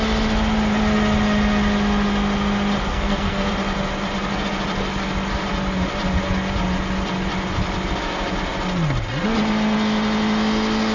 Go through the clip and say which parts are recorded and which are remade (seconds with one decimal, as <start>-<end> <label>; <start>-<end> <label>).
0.0-2.9 recorded; 2.9-3.5 remade; 3.5-10.9 recorded